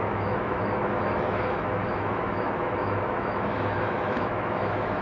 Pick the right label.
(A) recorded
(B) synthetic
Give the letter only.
B